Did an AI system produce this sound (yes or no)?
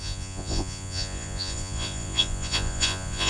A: yes